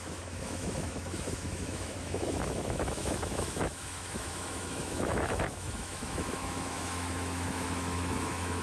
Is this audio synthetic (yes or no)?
yes